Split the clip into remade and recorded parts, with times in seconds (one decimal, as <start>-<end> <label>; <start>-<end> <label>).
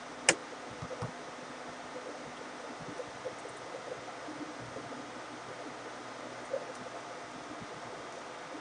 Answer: 0.0-8.6 recorded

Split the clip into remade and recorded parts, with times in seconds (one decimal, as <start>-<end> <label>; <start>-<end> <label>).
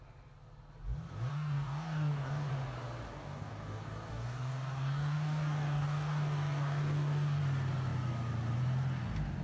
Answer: 0.0-1.3 recorded; 1.3-2.5 remade; 2.5-3.1 recorded; 3.1-7.4 remade; 7.4-9.4 recorded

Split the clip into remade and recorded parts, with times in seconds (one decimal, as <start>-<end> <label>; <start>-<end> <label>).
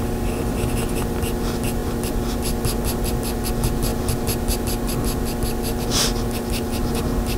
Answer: 0.0-7.4 recorded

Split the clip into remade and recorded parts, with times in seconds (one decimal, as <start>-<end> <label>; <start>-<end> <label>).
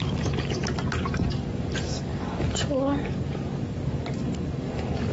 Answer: 0.0-0.6 remade; 0.6-1.1 recorded; 1.1-5.1 remade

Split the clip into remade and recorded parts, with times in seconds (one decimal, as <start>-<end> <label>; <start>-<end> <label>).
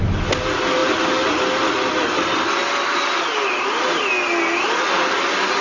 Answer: 0.0-5.6 recorded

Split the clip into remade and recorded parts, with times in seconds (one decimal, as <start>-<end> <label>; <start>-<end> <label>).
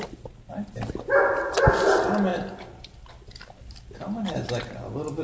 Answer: 0.0-5.2 recorded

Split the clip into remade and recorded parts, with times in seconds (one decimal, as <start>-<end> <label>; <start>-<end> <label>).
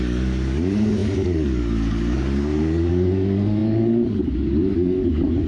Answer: 0.0-5.5 remade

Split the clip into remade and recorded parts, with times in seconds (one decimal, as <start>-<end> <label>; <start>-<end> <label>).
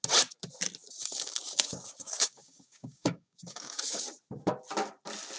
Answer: 0.0-0.8 recorded; 0.8-4.0 remade; 4.0-5.4 recorded